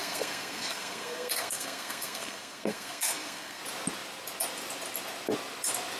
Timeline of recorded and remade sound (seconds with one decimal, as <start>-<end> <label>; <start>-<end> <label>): 0.0-3.6 remade; 3.6-6.0 recorded